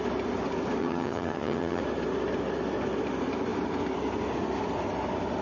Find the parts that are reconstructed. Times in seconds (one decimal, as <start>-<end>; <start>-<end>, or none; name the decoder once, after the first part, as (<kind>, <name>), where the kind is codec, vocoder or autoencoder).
0.8-1.8 (vocoder, HiFi-GAN)